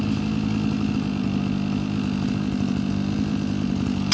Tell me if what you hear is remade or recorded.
recorded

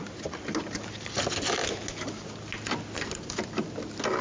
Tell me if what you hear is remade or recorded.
recorded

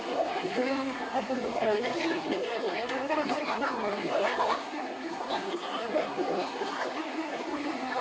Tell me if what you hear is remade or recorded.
remade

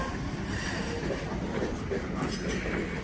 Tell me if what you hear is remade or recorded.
recorded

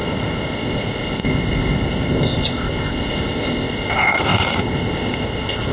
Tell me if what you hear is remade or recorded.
remade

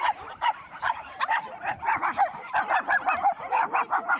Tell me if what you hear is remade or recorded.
remade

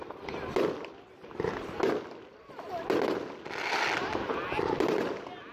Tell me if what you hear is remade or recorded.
recorded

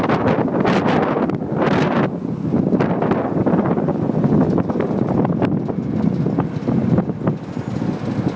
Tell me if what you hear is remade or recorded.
recorded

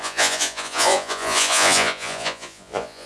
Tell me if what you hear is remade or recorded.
remade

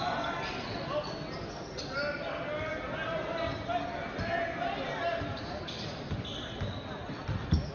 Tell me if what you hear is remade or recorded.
recorded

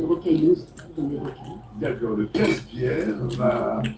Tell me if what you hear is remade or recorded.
recorded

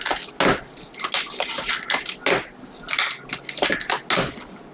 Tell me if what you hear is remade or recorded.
recorded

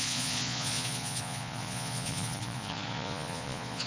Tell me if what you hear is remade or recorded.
remade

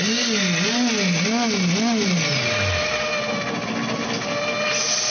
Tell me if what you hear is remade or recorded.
recorded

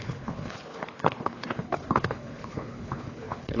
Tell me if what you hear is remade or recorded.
remade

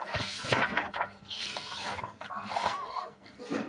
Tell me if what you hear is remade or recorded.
remade